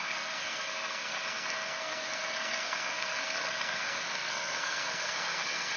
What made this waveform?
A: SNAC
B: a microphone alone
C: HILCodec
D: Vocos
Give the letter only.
A